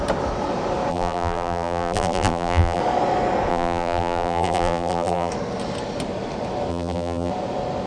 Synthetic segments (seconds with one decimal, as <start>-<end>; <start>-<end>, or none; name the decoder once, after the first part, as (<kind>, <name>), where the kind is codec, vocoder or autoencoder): 0.9-2.8 (vocoder, BigVGAN v2); 3.5-5.3; 6.7-7.3